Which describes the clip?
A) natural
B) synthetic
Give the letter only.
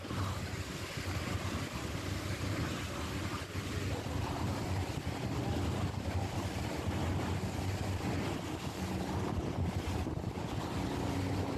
A